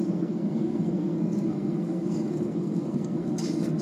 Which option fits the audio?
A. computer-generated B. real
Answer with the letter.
A